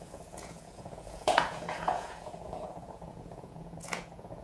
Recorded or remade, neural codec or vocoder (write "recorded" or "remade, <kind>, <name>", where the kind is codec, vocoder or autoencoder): remade, vocoder, Vocos